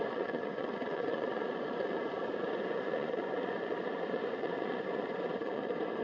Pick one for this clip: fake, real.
fake